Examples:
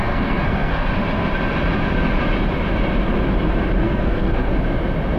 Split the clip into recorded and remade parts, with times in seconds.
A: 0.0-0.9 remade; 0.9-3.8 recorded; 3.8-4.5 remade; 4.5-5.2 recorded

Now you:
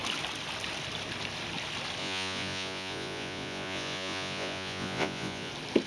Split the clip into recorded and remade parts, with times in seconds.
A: 0.0-2.0 recorded; 2.0-5.5 remade; 5.5-5.9 recorded

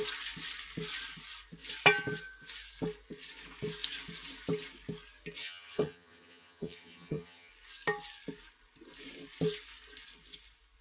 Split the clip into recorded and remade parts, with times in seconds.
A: 0.0-5.4 recorded; 5.4-7.5 remade; 7.5-10.8 recorded

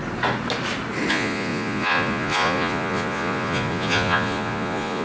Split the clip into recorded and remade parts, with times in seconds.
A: 0.0-1.1 recorded; 1.1-5.0 remade

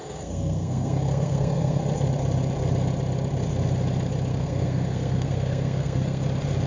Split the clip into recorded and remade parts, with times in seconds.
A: 0.0-1.8 remade; 1.8-4.3 recorded; 4.3-6.2 remade; 6.2-6.7 recorded

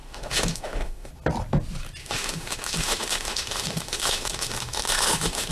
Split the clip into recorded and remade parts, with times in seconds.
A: 0.0-1.1 remade; 1.1-2.0 recorded; 2.0-5.5 remade